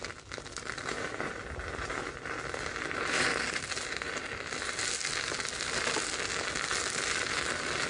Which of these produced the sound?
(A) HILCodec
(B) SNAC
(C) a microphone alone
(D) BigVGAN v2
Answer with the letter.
C